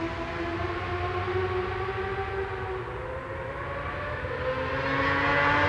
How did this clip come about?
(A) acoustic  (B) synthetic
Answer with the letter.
A